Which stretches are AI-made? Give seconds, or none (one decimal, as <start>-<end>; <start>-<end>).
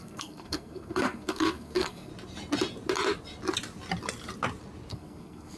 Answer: 0.0-2.1; 4.9-5.6